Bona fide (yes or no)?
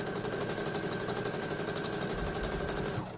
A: yes